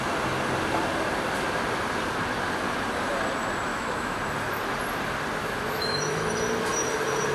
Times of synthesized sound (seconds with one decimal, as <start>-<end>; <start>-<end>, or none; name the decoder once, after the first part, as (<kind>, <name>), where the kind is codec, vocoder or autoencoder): 3.7-4.2 (autoencoder, DAC-VAE); 5.4-6.3